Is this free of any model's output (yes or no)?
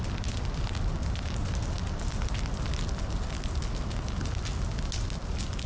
yes